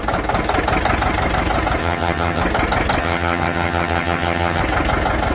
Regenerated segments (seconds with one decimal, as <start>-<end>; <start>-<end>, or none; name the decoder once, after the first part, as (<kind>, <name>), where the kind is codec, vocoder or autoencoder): 1.8-2.4 (vocoder, HiFi-GAN); 3.0-4.6